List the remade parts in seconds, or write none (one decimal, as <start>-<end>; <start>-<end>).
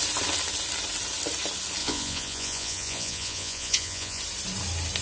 1.8-4.2